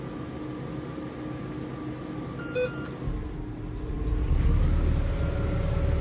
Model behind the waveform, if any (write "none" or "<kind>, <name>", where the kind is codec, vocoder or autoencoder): none